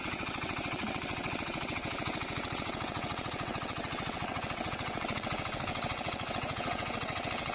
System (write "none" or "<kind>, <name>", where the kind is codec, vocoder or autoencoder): vocoder, WaveNeXt